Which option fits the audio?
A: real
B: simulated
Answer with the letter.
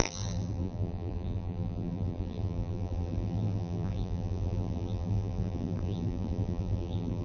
B